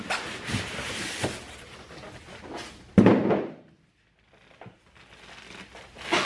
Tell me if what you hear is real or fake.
real